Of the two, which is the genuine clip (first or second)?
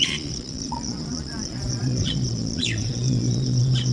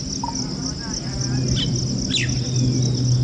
second